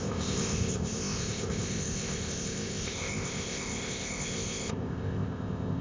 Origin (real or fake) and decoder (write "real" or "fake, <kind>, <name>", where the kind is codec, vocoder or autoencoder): fake, codec, ZipCodec